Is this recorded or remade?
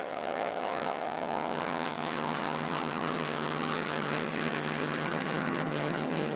remade